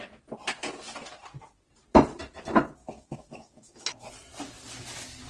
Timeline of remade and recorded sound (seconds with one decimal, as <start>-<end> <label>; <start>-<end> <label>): 0.0-2.8 recorded; 2.8-4.0 remade; 4.0-5.3 recorded